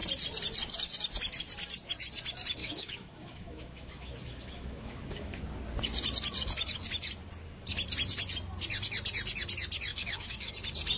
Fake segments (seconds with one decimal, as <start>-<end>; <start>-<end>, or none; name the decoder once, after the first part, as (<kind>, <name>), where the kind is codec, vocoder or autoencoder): 2.6-5.4 (autoencoder, DAC-VAE); 9.9-10.5

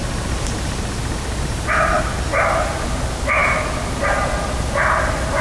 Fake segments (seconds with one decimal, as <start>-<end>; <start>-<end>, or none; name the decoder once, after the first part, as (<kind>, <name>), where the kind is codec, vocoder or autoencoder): none

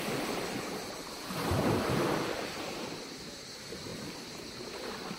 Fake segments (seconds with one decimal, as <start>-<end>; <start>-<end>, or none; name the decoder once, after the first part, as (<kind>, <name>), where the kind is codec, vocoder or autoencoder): none

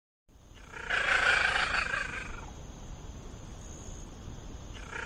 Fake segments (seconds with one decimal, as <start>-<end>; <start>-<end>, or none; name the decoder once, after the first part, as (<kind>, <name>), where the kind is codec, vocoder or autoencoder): none